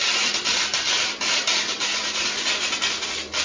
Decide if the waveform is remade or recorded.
recorded